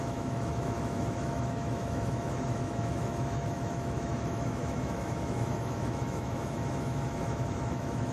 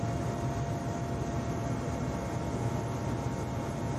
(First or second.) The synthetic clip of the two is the first